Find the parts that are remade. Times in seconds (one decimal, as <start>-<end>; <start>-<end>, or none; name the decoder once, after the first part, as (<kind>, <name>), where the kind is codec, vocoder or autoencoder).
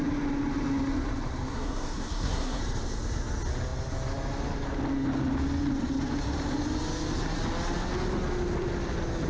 1.5-2.6 (codec, SNAC)